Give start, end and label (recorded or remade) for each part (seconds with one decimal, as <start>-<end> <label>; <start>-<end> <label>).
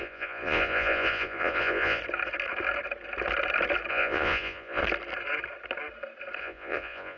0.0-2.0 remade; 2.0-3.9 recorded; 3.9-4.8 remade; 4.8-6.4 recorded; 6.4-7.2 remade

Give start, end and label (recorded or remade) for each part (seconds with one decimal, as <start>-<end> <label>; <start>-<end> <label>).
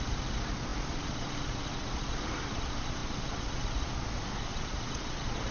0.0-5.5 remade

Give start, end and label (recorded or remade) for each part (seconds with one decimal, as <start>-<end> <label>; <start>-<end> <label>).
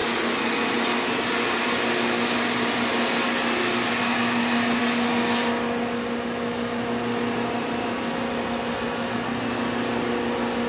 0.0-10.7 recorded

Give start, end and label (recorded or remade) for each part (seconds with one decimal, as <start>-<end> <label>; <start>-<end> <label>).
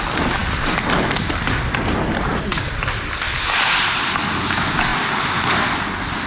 0.0-6.3 recorded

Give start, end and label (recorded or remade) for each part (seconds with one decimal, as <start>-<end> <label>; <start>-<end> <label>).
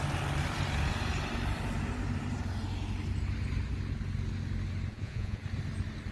0.0-4.9 recorded; 4.9-5.4 remade; 5.4-6.1 recorded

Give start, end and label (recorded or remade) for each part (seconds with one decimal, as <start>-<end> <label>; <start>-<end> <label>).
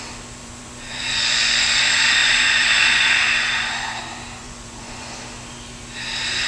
0.0-0.4 recorded; 0.4-1.8 remade; 1.8-2.2 recorded; 2.2-4.0 remade; 4.0-4.4 recorded; 4.4-5.2 remade; 5.2-6.5 recorded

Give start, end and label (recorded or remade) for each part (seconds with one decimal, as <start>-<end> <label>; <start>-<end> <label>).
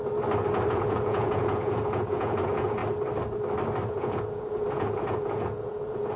0.0-0.7 recorded; 0.7-2.8 remade; 2.8-3.9 recorded; 3.9-6.2 remade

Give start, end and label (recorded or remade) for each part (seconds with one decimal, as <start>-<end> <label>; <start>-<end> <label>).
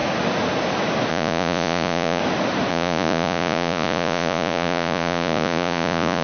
0.0-1.1 recorded; 1.1-2.2 remade; 2.2-2.7 recorded; 2.7-6.2 remade